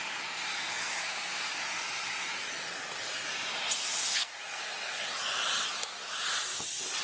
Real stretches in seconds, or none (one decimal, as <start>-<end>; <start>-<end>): 0.0-0.5; 1.6-4.0; 5.0-7.0